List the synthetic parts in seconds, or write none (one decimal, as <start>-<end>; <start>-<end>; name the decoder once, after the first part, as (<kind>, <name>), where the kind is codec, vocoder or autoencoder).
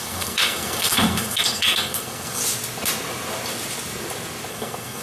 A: 0.0-2.4 (codec, SNAC); 4.5-5.0